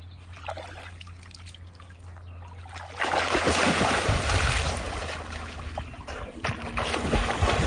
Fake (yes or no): no